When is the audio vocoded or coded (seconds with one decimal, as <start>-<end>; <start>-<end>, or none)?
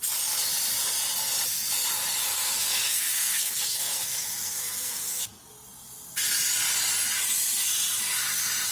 2.2-5.2